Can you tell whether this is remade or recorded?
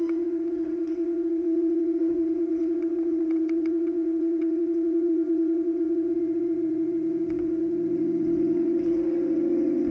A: remade